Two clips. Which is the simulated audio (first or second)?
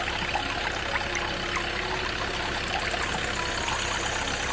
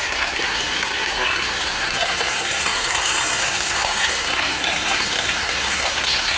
second